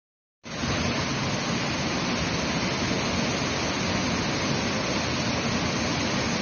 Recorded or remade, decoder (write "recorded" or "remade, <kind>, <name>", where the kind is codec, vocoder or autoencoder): recorded